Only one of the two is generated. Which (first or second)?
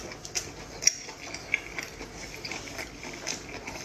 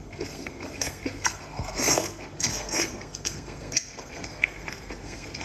second